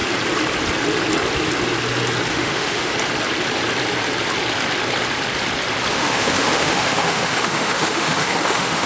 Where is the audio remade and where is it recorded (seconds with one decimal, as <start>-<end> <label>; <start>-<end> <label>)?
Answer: 0.0-2.3 recorded; 2.3-2.9 remade; 2.9-5.9 recorded; 5.9-8.9 remade